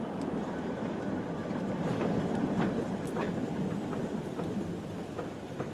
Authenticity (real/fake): real